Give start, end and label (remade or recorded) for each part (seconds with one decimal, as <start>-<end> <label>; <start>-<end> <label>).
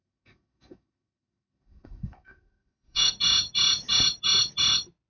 0.0-3.1 remade; 3.1-5.1 recorded